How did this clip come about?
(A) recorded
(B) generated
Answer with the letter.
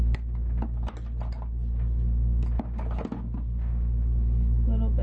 A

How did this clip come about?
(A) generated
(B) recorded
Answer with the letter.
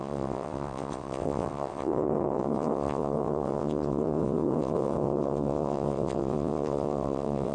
A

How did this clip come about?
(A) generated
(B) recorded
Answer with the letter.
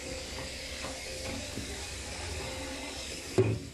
A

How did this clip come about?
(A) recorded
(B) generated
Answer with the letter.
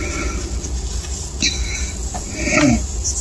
A